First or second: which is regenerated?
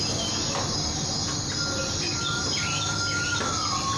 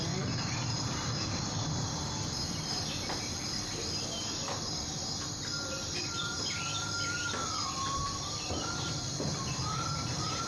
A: second